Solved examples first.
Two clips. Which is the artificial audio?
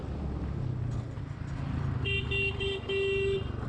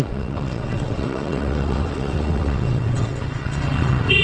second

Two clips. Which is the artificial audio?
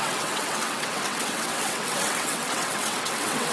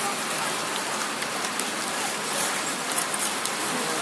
first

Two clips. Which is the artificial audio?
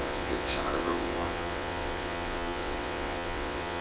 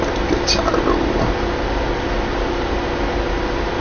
first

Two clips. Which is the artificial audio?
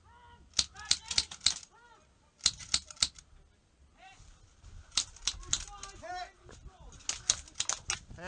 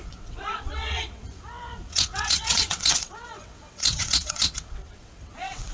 second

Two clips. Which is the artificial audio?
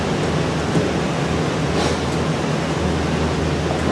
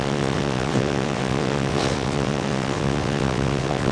second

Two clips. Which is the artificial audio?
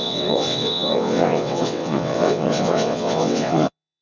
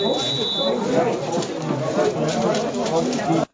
first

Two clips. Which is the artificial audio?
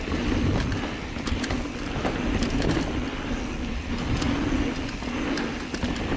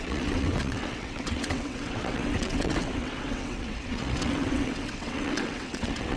second